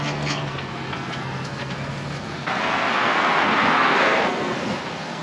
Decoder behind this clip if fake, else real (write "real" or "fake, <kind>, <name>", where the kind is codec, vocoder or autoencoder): fake, codec, SNAC